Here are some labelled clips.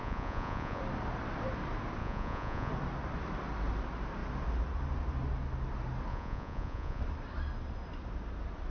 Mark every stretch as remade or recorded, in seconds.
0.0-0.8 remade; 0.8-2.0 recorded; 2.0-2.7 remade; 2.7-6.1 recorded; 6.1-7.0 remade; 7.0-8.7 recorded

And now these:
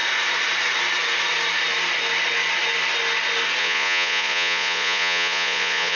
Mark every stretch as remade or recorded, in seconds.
0.0-3.6 recorded; 3.6-6.0 remade

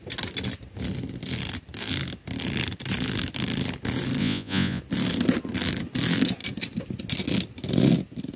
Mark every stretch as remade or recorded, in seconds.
0.0-4.2 recorded; 4.2-4.8 remade; 4.8-8.4 recorded

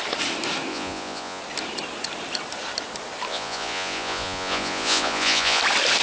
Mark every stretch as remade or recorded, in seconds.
0.0-0.7 recorded; 0.7-1.4 remade; 1.4-3.3 recorded; 3.3-5.6 remade; 5.6-6.0 recorded

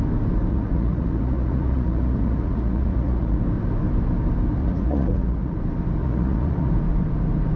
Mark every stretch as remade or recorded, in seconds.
0.0-0.5 recorded; 0.5-3.4 remade; 3.4-4.6 recorded; 4.6-5.6 remade; 5.6-6.0 recorded; 6.0-6.7 remade; 6.7-7.6 recorded

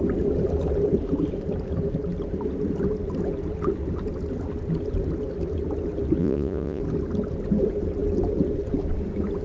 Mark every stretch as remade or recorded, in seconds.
0.0-6.2 recorded; 6.2-6.8 remade; 6.8-9.4 recorded

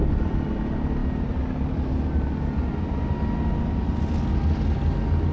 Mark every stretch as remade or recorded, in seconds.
0.0-5.3 recorded

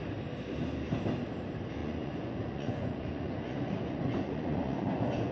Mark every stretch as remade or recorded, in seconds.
0.0-1.8 recorded; 1.8-5.3 remade